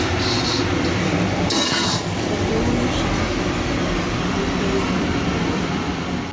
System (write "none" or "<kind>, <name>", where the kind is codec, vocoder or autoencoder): vocoder, BigVGAN v2